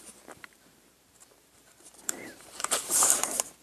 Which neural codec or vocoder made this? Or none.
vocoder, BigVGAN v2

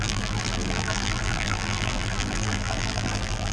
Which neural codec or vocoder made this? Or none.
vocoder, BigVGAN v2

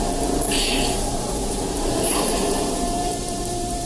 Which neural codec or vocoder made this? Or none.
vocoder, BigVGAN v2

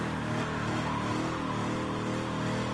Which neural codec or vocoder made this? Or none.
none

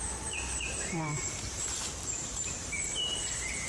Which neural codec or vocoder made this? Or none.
vocoder, BigVGAN v2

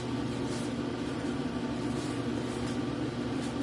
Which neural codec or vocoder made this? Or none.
vocoder, BigVGAN v2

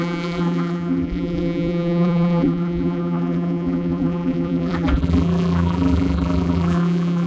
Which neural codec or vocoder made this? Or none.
vocoder, BigVGAN v2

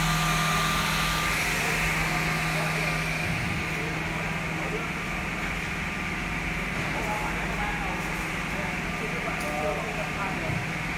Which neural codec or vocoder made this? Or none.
none